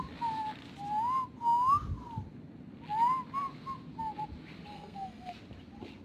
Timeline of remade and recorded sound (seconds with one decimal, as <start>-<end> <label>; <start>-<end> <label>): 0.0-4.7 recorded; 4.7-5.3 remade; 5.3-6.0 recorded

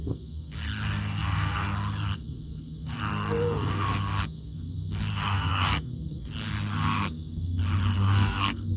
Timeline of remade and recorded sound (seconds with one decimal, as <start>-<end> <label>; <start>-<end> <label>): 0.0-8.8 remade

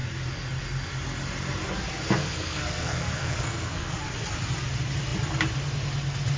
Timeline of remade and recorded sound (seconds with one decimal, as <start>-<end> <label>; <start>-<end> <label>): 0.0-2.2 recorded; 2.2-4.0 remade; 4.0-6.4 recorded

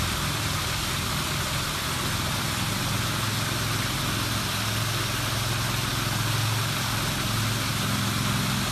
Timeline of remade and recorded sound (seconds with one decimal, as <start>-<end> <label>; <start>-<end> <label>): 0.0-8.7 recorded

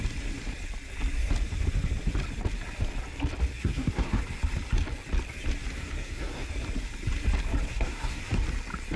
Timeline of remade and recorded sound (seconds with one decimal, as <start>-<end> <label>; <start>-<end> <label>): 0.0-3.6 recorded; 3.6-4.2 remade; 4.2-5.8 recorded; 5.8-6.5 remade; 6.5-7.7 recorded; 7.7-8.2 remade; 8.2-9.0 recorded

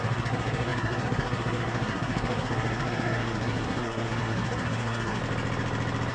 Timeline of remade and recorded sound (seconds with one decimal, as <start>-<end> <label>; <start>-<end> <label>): 0.0-5.2 remade; 5.2-6.1 recorded